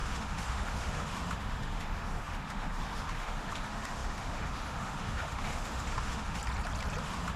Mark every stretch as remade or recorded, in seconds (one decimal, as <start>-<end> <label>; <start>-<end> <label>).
0.0-6.4 remade; 6.4-7.0 recorded; 7.0-7.4 remade

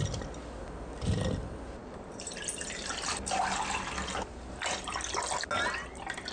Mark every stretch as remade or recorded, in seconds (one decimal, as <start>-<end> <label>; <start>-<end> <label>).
0.0-6.3 recorded